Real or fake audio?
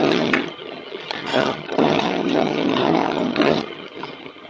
fake